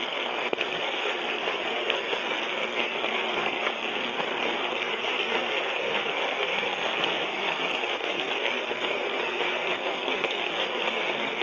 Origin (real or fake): fake